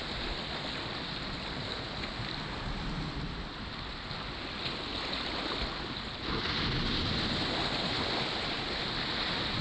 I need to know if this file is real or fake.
real